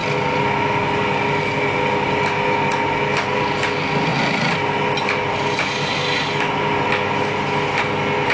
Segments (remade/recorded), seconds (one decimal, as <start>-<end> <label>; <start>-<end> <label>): 0.0-8.3 recorded